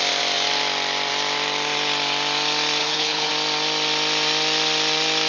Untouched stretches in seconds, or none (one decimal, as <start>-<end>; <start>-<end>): 0.0-2.8; 3.3-5.3